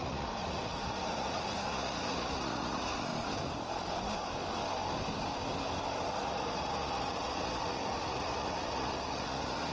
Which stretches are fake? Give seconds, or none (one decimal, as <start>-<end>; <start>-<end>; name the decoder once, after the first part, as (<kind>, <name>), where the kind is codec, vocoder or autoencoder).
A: 0.0-3.1 (vocoder, Vocos); 6.1-9.7